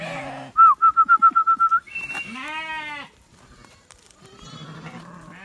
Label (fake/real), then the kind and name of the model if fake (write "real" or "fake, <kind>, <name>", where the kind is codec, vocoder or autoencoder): real